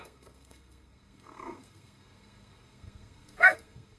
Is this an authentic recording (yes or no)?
no